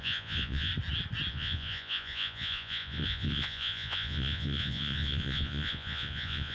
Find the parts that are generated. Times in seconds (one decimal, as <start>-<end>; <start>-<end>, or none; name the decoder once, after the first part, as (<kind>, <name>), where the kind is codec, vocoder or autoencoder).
0.0-0.7 (vocoder, Vocos); 1.3-6.5